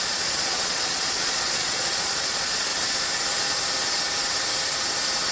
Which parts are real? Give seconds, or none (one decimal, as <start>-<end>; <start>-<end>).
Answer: 2.7-5.3